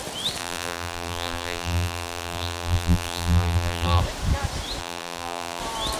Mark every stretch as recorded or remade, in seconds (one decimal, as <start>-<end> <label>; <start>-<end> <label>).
0.0-0.4 recorded; 0.4-4.0 remade; 4.0-4.8 recorded; 4.8-5.6 remade; 5.6-6.0 recorded